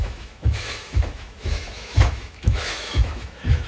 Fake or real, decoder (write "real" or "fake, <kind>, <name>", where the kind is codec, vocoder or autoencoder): fake, autoencoder, DAC-VAE